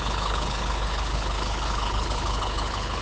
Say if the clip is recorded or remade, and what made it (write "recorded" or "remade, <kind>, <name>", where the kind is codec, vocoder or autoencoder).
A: remade, codec, HILCodec